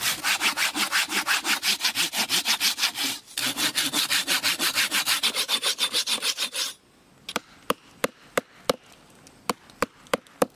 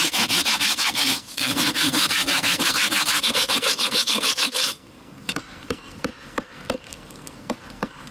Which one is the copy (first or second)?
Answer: second